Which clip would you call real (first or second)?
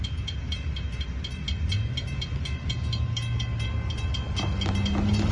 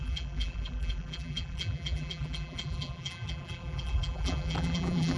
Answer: first